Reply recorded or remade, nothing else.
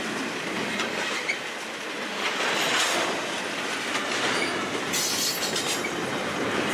recorded